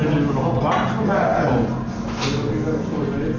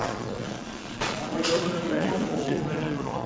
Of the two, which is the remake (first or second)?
second